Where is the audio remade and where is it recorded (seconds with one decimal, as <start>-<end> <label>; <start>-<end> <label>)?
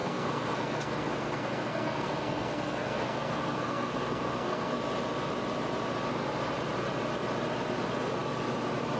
0.0-4.8 remade; 4.8-9.0 recorded